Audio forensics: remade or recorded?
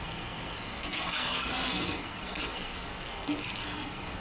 remade